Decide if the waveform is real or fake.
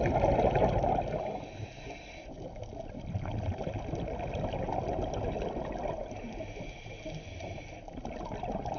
real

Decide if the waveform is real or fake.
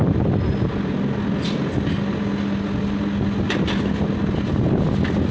real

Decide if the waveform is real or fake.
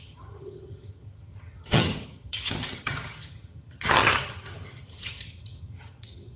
fake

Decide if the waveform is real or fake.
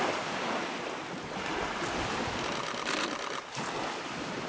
real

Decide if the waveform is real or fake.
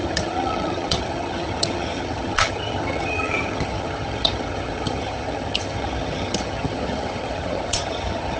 fake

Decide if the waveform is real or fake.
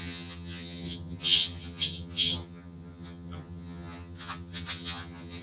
fake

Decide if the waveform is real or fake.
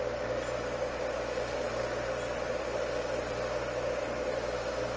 real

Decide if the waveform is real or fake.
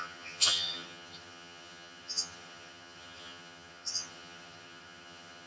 fake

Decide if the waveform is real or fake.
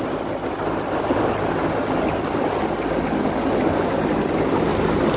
real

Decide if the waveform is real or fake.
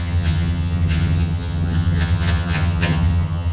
fake